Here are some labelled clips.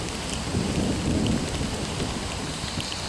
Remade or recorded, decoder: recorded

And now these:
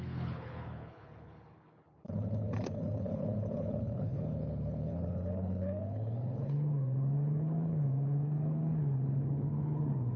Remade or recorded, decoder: remade, codec, HILCodec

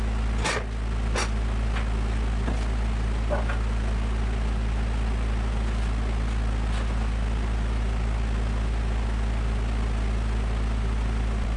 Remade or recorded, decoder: recorded